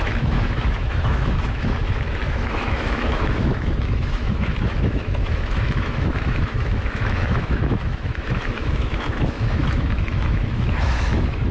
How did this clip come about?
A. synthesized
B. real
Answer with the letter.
A